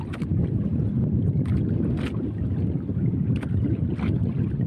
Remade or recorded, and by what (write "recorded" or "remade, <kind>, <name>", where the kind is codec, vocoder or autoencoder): recorded